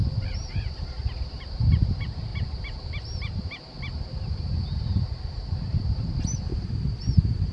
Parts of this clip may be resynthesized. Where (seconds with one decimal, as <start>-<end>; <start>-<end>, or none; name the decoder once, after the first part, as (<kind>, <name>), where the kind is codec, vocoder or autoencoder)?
0.0-2.3 (vocoder, BigVGAN v2); 4.1-7.5